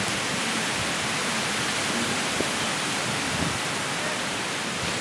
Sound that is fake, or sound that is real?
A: real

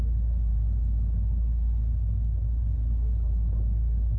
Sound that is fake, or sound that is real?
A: real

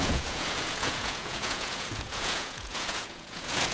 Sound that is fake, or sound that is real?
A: fake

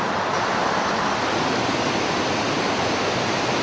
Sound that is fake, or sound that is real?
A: real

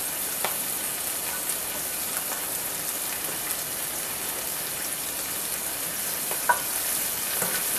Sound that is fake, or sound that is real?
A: real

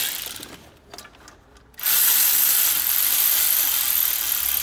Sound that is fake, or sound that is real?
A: real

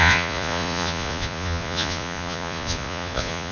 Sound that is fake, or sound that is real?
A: fake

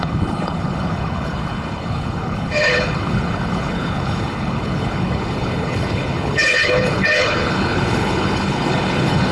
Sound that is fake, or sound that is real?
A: fake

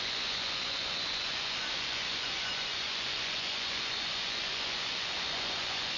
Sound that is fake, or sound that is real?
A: fake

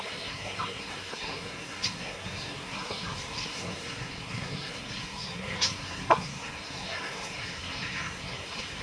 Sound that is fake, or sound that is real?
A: fake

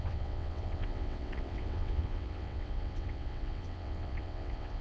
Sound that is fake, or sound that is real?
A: fake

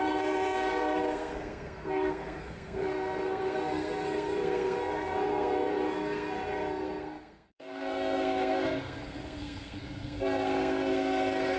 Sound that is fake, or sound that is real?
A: fake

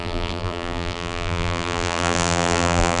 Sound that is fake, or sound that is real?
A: fake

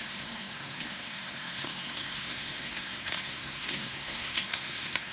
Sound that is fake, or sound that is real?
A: fake